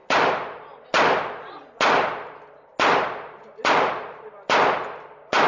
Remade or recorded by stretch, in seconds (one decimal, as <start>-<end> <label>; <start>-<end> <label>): 0.0-5.5 recorded